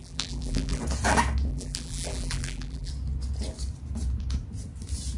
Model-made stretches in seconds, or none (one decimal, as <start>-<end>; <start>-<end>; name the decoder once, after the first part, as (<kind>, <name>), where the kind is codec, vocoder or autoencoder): 0.0-0.8 (vocoder, BigVGAN v2); 1.5-2.9